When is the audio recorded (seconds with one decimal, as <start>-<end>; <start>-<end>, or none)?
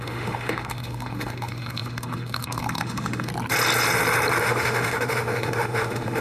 3.3-4.4